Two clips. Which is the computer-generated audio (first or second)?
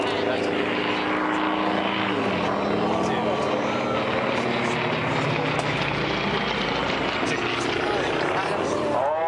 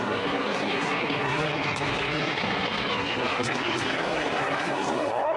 second